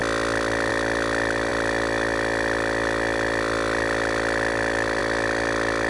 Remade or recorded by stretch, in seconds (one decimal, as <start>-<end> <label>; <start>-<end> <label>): 0.0-5.9 recorded